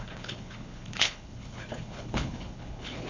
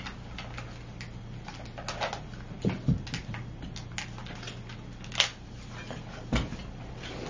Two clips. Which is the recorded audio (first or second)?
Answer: second